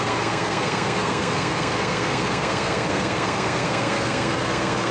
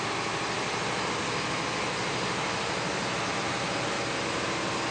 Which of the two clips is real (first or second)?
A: second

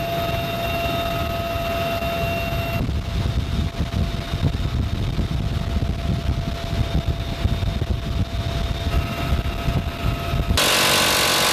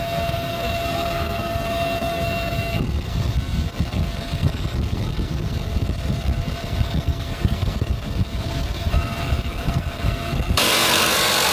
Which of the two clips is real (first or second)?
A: first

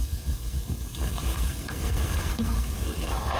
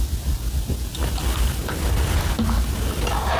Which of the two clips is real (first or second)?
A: second